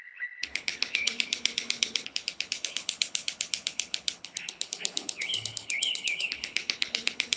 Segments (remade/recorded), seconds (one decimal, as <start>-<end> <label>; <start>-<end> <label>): 0.0-7.4 remade

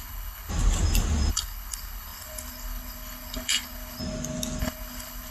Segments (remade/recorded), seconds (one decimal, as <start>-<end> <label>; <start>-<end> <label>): 0.0-0.5 remade; 0.5-1.3 recorded; 1.3-4.0 remade; 4.0-4.6 recorded; 4.6-5.3 remade

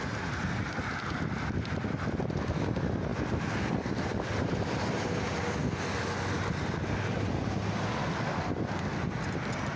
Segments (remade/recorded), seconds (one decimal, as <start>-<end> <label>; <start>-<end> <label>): 0.0-9.8 recorded

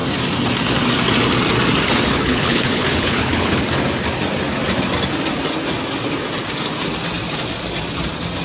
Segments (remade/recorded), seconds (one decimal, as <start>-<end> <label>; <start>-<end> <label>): 0.0-2.1 recorded; 2.1-3.6 remade; 3.6-8.4 recorded